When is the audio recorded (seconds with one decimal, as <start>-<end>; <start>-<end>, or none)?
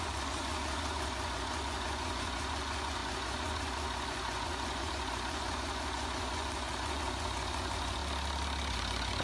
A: 8.0-8.7